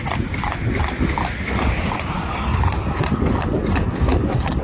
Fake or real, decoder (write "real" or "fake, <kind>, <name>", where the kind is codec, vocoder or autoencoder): real